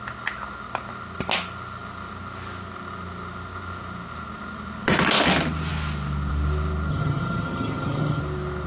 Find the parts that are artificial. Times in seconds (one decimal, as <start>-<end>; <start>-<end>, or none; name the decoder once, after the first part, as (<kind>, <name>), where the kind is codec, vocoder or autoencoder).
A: 6.9-8.2 (vocoder, HiFi-GAN)